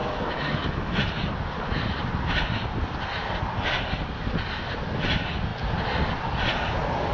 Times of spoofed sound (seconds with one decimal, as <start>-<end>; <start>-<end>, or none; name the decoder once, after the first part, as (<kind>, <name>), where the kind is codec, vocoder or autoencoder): 0.0-1.0 (autoencoder, DAC-VAE)